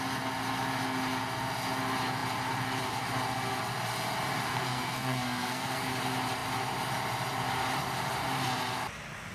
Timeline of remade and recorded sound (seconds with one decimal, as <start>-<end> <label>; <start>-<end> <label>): 0.0-4.5 recorded; 4.5-5.8 remade; 5.8-9.3 recorded